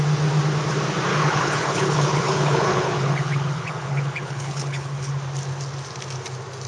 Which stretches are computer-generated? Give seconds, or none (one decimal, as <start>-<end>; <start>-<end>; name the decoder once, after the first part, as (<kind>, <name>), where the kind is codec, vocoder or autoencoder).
1.1-5.1 (codec, HILCodec)